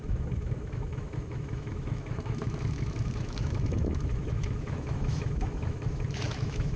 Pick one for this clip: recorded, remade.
remade